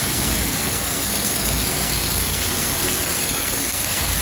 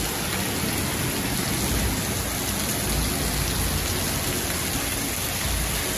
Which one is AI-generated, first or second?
first